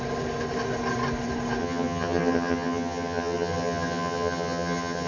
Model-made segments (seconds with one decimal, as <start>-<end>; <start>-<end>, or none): 1.6-5.1